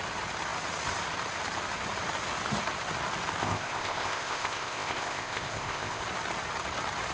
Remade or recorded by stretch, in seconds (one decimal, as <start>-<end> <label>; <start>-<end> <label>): 0.0-3.4 recorded; 3.4-6.0 remade; 6.0-7.1 recorded